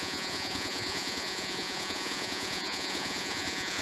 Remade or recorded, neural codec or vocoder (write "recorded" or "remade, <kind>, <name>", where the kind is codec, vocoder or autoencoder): remade, vocoder, Vocos